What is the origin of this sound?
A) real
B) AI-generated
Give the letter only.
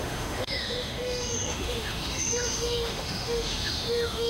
B